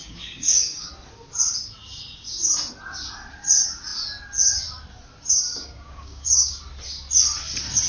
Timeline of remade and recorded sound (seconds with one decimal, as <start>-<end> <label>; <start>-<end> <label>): 0.0-0.9 remade; 0.9-5.5 recorded; 5.5-6.6 remade; 6.6-7.9 recorded